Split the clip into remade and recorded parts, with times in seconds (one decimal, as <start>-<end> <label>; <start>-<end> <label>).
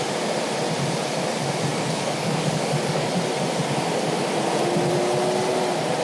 0.0-1.7 recorded; 1.7-3.1 remade; 3.1-6.0 recorded